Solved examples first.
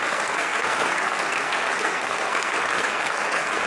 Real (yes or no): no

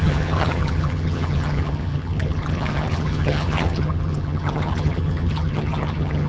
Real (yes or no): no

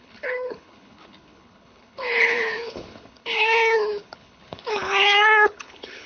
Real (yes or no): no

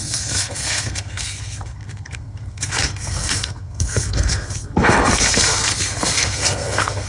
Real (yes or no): no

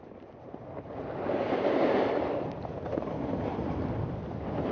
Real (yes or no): yes